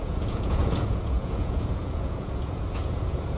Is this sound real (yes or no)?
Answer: no